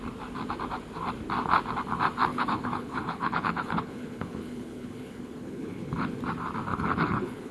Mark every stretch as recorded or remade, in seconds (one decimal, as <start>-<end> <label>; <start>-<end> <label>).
0.0-2.3 recorded; 2.3-6.2 remade; 6.2-6.7 recorded; 6.7-7.5 remade